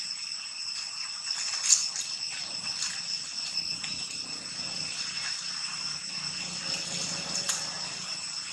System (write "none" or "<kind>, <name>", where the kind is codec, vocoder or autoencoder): none